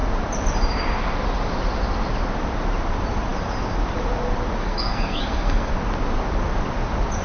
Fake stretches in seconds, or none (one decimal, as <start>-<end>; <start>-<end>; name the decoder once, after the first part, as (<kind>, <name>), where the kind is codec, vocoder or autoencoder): 4.6-5.7 (codec, SNAC)

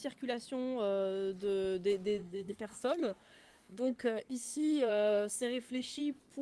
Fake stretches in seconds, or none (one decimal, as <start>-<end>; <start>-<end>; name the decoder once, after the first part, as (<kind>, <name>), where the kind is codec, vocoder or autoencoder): 2.2-6.0 (codec, SNAC)

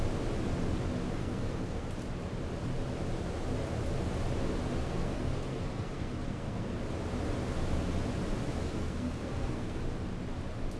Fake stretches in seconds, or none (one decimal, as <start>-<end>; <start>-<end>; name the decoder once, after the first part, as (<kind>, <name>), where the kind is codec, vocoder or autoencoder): 1.2-1.9 (codec, SNAC); 4.8-6.8; 8.6-9.8

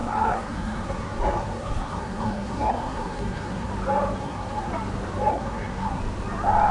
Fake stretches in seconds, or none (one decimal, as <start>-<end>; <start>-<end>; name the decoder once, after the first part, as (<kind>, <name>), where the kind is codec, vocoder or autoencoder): 0.0-3.7 (codec, SNAC); 4.2-4.7; 5.3-6.0

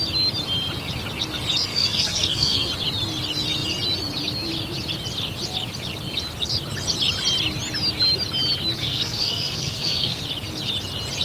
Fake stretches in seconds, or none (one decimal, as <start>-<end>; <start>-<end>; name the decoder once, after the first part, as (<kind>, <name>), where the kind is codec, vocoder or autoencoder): 1.7-2.7 (codec, SNAC); 8.8-10.2